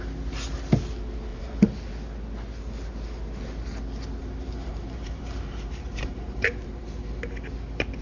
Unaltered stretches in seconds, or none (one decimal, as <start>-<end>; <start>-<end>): 0.0-1.3; 1.9-4.2; 7.2-8.0